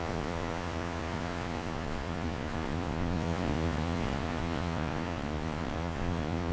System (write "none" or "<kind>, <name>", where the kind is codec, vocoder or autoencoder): vocoder, Vocos